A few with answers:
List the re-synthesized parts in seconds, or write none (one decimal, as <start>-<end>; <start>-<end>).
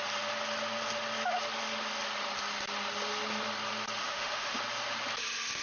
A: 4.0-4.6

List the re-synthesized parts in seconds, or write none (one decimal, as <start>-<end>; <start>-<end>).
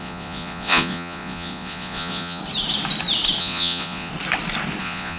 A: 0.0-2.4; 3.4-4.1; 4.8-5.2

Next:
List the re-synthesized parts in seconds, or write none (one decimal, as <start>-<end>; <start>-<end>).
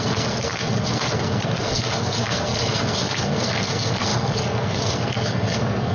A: 0.0-5.9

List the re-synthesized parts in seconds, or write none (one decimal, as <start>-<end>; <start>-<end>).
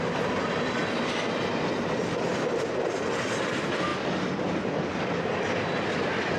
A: none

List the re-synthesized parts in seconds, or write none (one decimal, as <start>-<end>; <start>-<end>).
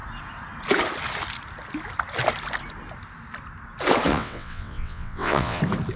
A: 4.1-5.6